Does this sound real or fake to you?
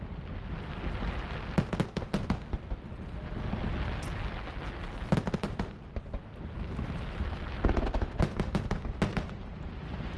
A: real